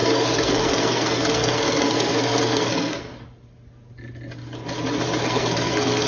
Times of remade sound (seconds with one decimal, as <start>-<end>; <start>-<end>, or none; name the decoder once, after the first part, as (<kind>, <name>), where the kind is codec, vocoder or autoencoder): 0.0-3.1 (codec, SNAC); 5.2-6.1